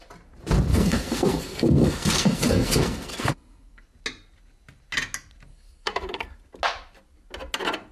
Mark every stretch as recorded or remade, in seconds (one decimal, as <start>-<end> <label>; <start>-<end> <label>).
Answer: 0.0-0.7 recorded; 0.7-3.8 remade; 3.8-5.5 recorded; 5.5-6.3 remade; 6.3-7.9 recorded